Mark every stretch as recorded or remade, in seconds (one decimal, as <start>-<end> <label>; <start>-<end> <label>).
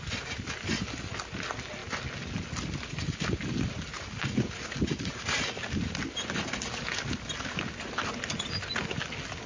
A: 0.0-9.5 recorded